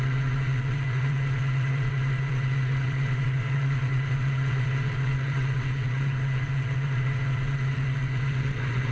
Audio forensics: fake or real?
fake